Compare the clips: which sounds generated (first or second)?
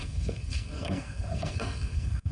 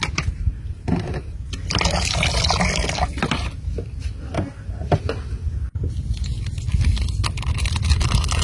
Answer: first